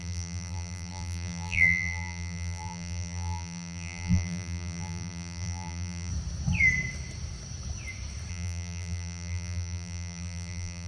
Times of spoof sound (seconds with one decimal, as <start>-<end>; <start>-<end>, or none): 0.0-6.1; 8.3-10.9